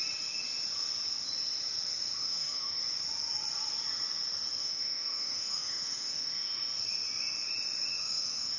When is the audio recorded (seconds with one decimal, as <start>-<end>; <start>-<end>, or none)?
0.0-2.2; 2.8-4.6; 6.8-7.9